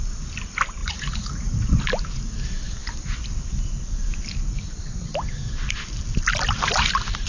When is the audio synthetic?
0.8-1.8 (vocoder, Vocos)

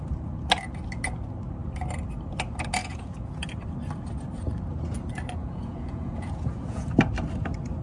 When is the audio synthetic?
2.8-3.5 (vocoder, Vocos); 5.4-6.9

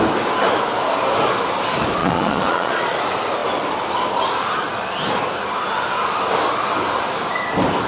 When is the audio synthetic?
2.0-3.0 (vocoder, Vocos)

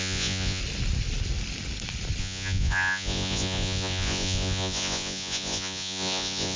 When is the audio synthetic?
0.0-0.6 (vocoder, Vocos); 2.2-6.6

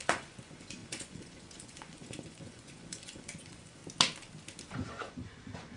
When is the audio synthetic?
0.0-3.8 (vocoder, Vocos); 4.6-5.8

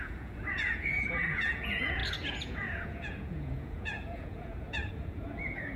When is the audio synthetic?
0.0-5.8 (vocoder, Vocos)